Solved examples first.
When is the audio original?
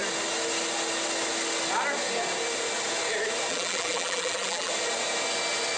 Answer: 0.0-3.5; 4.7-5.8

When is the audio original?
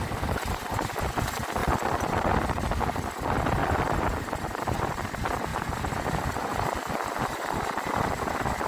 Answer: 0.0-8.7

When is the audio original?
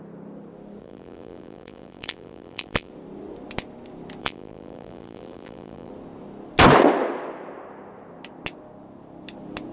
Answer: 0.0-0.8; 2.9-4.2; 5.9-9.7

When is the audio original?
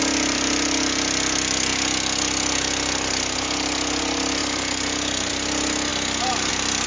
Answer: 0.0-4.4; 5.3-5.9; 6.5-6.9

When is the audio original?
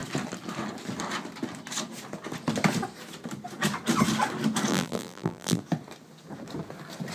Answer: 0.0-4.7; 5.6-7.1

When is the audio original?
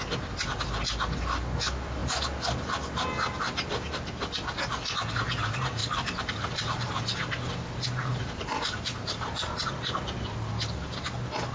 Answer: 0.0-5.8; 7.0-8.1; 9.6-11.5